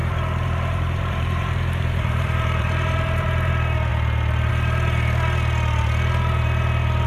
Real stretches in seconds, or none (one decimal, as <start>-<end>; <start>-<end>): 3.5-7.1